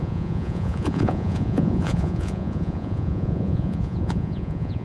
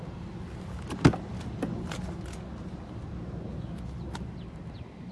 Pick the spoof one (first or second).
first